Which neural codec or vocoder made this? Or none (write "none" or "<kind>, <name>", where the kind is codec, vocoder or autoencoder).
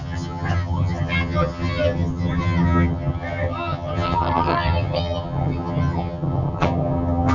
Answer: vocoder, HiFi-GAN